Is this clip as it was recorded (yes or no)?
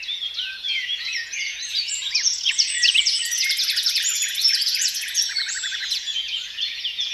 no